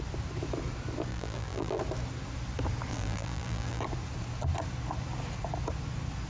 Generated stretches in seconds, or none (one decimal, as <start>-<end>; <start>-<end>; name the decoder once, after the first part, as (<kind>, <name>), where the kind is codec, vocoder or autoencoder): 1.1-1.8 (vocoder, BigVGAN v2); 2.9-3.8

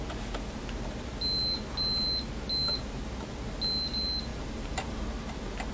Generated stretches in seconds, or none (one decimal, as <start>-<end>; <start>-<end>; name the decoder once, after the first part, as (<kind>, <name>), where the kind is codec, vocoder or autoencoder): 4.3-5.0 (vocoder, BigVGAN v2)

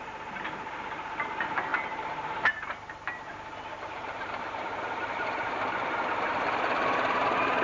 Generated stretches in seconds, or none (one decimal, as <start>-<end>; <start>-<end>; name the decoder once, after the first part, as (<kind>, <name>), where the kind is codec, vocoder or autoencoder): 1.7-5.6 (vocoder, BigVGAN v2); 6.3-7.6

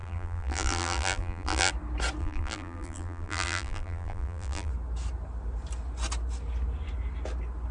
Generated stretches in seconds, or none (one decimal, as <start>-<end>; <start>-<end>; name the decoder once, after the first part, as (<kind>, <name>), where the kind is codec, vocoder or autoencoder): 0.0-1.7 (vocoder, BigVGAN v2); 2.2-4.7

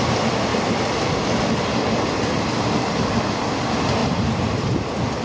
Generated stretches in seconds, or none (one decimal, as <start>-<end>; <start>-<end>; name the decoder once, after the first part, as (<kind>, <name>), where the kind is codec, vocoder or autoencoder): 4.0-4.7 (vocoder, BigVGAN v2)

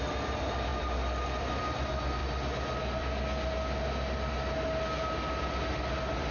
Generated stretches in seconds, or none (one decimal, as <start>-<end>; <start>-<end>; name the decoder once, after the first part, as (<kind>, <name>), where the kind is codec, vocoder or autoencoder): 0.7-1.5 (vocoder, BigVGAN v2)

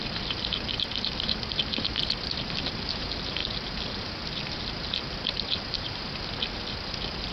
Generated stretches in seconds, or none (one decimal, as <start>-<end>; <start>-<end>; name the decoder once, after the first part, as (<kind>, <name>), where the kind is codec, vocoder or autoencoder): none

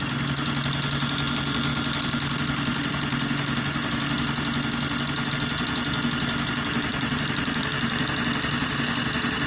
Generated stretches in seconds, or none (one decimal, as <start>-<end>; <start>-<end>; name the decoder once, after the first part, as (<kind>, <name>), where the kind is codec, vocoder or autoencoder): 6.9-8.2 (vocoder, BigVGAN v2)